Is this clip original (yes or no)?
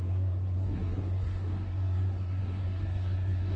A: no